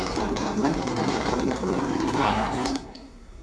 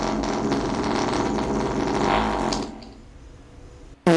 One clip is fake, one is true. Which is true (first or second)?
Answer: second